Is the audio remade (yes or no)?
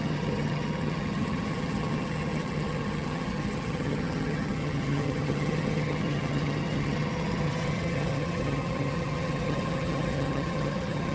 yes